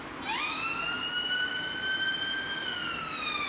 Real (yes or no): yes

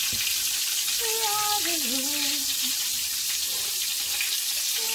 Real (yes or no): yes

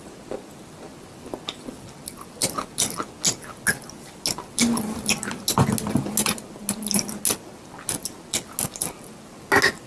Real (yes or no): yes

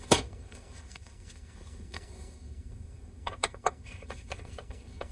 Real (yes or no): no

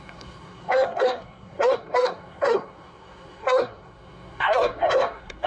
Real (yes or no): no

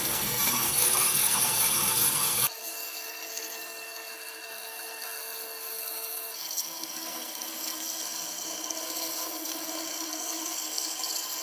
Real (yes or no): no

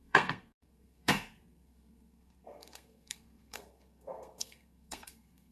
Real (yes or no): no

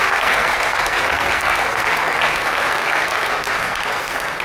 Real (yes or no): no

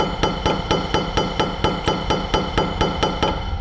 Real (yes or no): yes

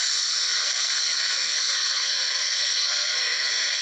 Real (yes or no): no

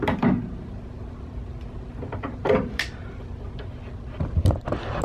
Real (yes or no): yes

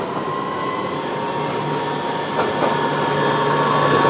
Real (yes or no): yes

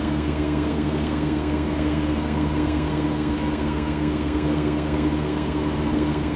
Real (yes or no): no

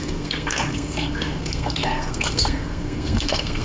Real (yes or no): no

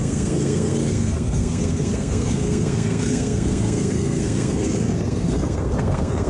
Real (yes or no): no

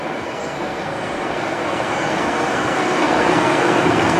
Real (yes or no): no